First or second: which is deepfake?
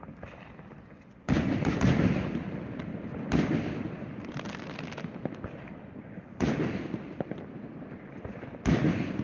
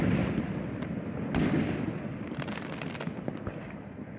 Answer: first